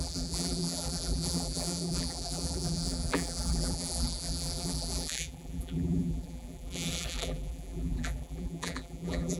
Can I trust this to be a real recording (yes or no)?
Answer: no